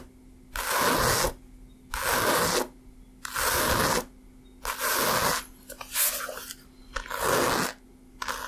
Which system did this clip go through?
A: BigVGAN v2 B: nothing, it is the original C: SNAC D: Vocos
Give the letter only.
B